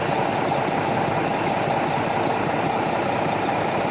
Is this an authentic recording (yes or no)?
yes